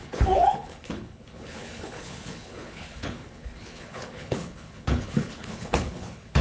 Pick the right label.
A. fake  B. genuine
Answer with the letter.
A